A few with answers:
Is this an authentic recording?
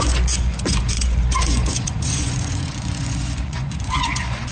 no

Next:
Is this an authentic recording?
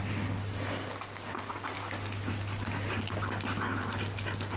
yes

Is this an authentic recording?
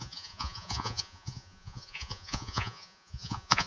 no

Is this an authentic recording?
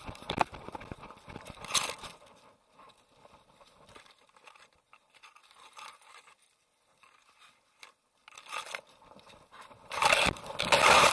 yes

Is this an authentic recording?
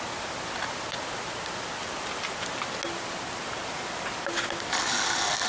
yes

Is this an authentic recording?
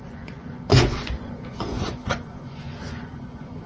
no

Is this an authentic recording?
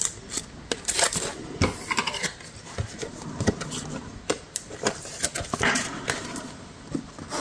yes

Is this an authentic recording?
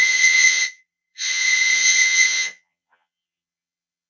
no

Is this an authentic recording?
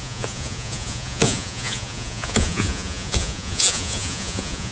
no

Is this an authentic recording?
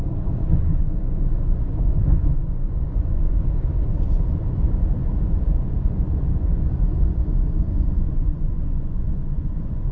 no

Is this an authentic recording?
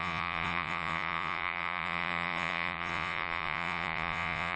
no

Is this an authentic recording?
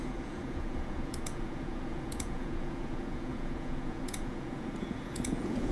no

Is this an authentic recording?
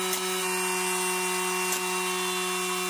yes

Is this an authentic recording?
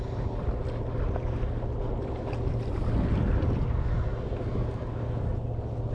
yes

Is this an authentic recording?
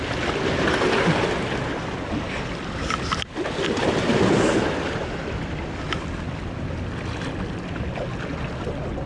yes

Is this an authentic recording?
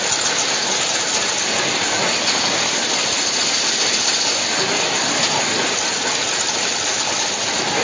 yes